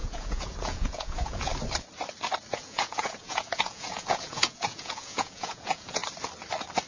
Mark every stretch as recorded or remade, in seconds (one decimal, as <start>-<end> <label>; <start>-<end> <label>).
0.0-1.5 remade; 1.5-2.5 recorded; 2.5-6.0 remade; 6.0-6.9 recorded